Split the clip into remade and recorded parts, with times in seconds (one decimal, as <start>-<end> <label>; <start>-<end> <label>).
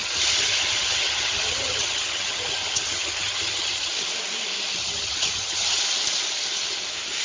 0.0-3.9 remade; 3.9-4.8 recorded; 4.8-5.8 remade; 5.8-7.2 recorded